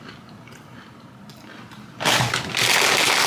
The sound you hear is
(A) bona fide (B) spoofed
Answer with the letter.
A